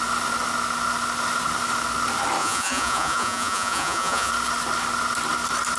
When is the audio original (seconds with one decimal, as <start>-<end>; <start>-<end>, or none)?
0.0-2.4; 4.3-5.8